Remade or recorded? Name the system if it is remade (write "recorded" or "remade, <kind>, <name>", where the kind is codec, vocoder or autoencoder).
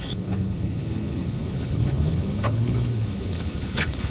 remade, codec, HILCodec